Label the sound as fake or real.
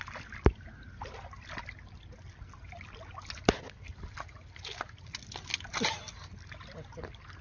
real